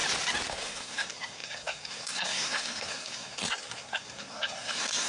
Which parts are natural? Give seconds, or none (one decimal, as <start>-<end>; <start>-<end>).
0.0-0.5